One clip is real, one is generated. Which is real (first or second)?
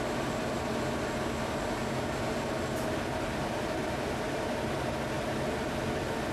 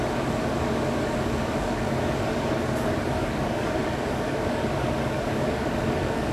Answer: first